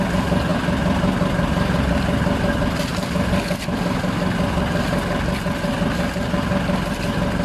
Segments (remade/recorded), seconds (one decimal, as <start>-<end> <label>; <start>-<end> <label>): 0.0-7.4 recorded